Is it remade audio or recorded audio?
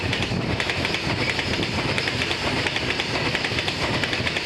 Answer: remade